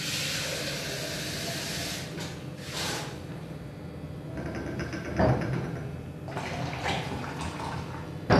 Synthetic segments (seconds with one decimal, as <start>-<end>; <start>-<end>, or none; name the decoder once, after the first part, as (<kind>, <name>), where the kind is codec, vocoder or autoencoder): none